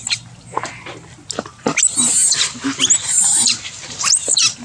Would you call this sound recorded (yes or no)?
yes